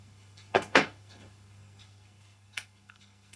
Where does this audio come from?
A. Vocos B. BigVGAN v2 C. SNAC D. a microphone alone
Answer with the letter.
C